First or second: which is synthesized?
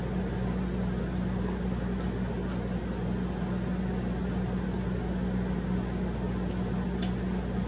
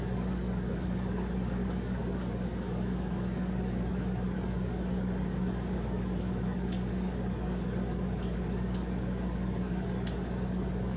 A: second